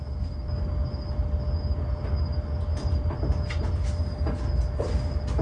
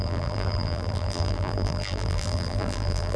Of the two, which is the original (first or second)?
first